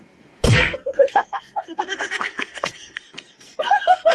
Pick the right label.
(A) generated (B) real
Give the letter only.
A